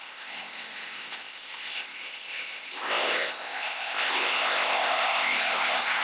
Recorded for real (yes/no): no